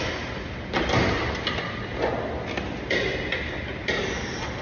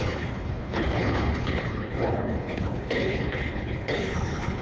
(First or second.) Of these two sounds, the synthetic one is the second